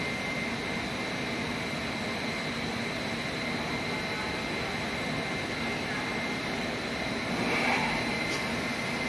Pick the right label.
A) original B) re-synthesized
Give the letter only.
A